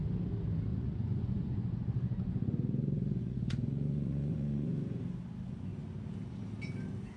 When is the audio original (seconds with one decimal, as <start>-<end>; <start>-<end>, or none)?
0.0-0.7; 5.0-7.2